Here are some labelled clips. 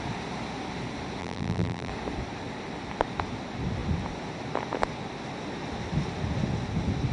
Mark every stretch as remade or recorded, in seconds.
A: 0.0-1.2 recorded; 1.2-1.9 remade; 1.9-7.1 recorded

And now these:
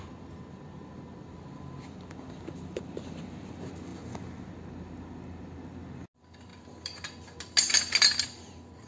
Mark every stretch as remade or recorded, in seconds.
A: 0.0-8.9 recorded

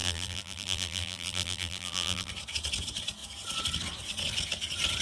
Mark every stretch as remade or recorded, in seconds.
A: 0.0-2.3 remade; 2.3-5.0 recorded

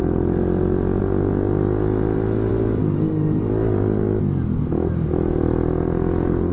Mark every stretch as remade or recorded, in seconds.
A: 0.0-6.5 recorded

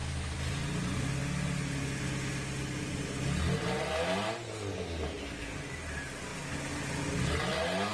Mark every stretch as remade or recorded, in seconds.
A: 0.0-0.5 remade; 0.5-7.9 recorded

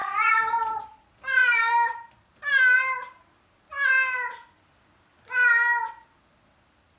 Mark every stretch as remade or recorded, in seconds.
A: 0.0-1.4 recorded; 1.4-2.1 remade; 2.1-7.0 recorded

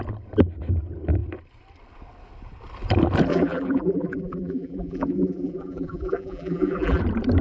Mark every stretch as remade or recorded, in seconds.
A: 0.0-3.3 recorded; 3.3-7.0 remade; 7.0-7.4 recorded